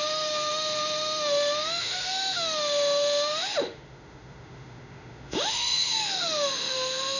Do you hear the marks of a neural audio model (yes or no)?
yes